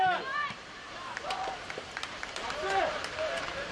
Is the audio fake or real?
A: fake